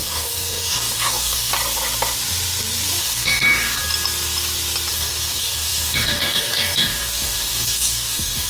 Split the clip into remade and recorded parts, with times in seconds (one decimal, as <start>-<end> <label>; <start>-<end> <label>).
0.0-1.5 remade; 1.5-3.0 recorded; 3.0-3.8 remade; 3.8-4.9 recorded; 4.9-8.5 remade